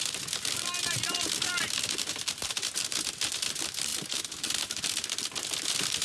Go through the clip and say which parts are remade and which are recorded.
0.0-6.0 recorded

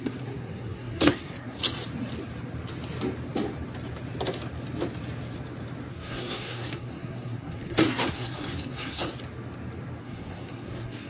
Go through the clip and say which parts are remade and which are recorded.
0.0-1.6 remade; 1.6-5.9 recorded; 5.9-9.1 remade; 9.1-10.0 recorded; 10.0-11.1 remade

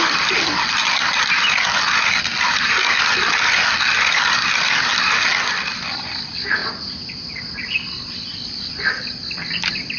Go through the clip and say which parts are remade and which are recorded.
0.0-10.0 recorded

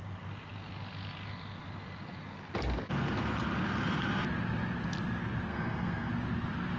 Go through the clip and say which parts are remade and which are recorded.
0.0-5.5 recorded; 5.5-6.1 remade; 6.1-6.8 recorded